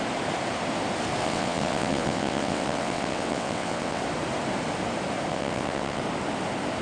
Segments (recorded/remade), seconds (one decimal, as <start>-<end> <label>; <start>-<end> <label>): 0.0-1.2 recorded; 1.2-4.0 remade; 4.0-5.3 recorded; 5.3-6.0 remade; 6.0-6.8 recorded